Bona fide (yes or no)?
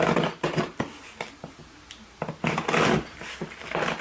yes